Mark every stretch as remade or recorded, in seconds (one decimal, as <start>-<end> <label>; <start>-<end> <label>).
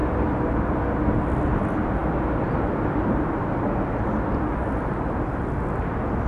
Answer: 0.0-6.3 recorded